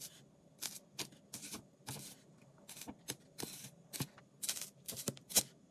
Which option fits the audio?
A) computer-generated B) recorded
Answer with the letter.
B